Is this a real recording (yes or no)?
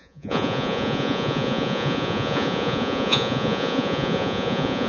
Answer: no